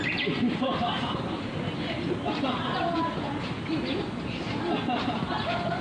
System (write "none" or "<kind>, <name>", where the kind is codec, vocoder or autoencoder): none